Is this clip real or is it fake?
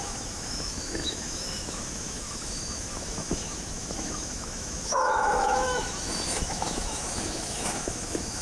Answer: fake